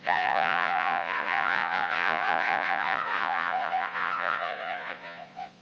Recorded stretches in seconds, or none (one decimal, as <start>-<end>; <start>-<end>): none